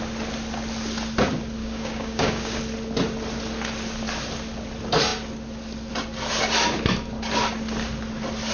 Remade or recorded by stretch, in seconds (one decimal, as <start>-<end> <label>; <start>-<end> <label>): 0.0-1.6 recorded; 1.6-2.6 remade; 2.6-8.5 recorded